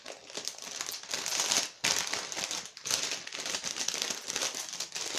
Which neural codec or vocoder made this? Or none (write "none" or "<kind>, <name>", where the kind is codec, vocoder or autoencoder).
none